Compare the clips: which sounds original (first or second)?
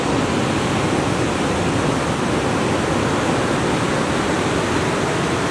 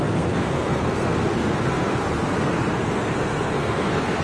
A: first